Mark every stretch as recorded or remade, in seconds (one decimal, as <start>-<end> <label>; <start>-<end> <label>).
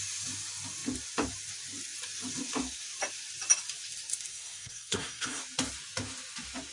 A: 0.0-4.3 recorded; 4.3-5.4 remade; 5.4-6.7 recorded